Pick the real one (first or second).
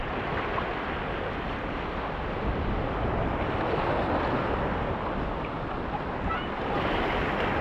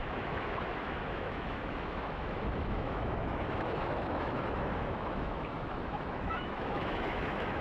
first